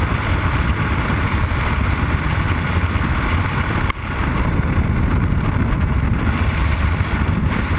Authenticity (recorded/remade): recorded